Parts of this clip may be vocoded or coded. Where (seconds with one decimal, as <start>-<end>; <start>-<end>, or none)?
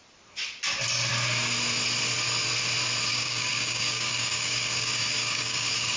3.1-6.0